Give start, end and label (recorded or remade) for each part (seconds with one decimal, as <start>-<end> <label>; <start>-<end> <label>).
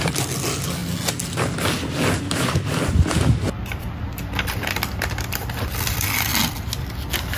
0.0-7.4 recorded